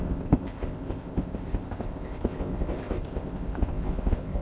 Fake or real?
fake